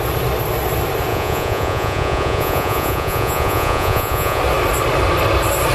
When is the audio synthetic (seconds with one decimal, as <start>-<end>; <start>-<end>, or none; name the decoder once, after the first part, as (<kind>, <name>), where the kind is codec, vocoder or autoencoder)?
1.1-4.4 (vocoder, Vocos)